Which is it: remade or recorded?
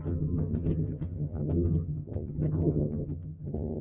remade